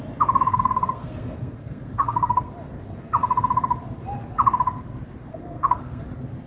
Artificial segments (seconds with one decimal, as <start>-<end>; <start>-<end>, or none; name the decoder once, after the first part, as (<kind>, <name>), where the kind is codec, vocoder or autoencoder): 0.5-2.5 (codec, SNAC); 5.3-6.0